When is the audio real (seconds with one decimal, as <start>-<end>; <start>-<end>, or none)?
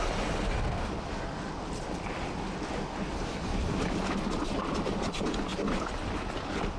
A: 0.0-6.8